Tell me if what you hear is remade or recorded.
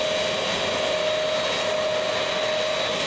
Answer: recorded